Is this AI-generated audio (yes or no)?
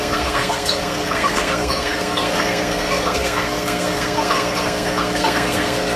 yes